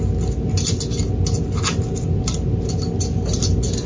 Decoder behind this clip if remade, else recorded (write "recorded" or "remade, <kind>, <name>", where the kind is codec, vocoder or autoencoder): recorded